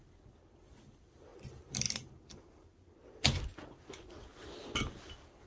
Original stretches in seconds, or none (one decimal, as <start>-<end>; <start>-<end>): 0.0-5.5